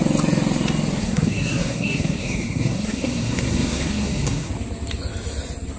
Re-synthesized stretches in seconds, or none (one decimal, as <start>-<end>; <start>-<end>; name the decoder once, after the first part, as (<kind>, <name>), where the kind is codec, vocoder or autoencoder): 1.0-4.5 (codec, SNAC)